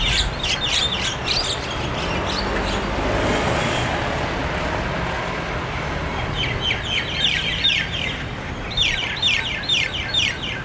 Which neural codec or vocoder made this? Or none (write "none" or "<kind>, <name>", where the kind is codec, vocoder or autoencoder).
none